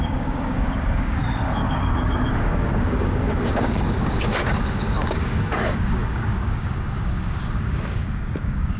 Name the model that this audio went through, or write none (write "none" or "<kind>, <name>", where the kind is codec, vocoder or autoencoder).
codec, DAC